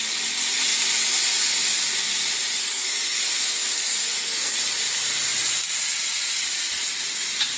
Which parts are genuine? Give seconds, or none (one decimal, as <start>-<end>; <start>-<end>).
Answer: 0.0-2.6; 4.6-7.6